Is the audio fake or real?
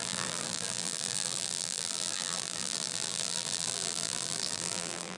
fake